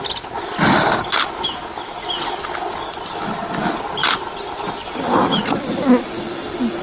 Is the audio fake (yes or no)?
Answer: no